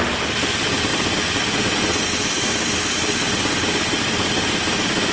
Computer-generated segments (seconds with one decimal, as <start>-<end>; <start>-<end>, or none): none